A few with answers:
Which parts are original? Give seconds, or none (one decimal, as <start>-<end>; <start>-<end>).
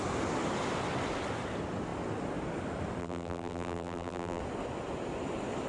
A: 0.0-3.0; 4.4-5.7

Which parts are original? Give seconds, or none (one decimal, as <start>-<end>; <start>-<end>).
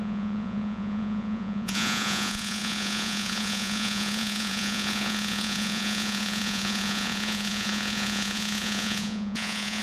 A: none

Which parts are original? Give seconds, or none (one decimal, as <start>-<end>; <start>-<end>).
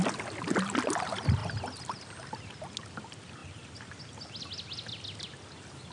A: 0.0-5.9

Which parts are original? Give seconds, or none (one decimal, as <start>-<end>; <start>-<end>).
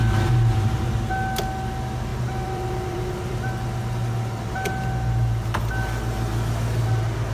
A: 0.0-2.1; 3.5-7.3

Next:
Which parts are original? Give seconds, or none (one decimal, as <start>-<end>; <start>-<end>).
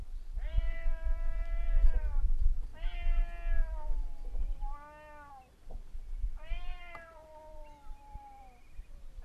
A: 2.7-5.3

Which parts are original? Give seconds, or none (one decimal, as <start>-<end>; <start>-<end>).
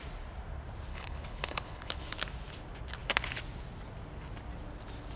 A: 0.0-0.9; 2.1-5.2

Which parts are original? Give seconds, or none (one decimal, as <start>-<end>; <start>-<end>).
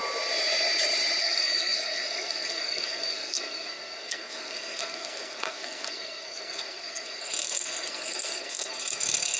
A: 0.0-1.2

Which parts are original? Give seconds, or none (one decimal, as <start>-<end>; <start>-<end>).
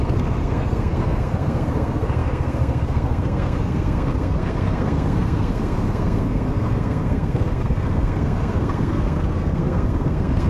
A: none